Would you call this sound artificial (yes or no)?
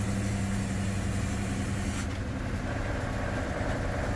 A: no